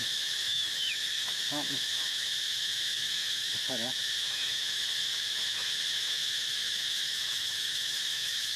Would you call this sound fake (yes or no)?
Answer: yes